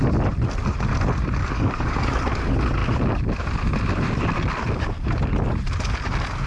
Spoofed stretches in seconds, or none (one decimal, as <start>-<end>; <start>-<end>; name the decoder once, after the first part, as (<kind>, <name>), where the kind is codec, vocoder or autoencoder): 1.4-2.2 (codec, DAC)